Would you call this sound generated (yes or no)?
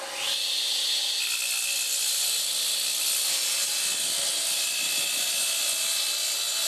no